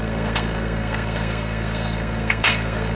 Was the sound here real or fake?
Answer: fake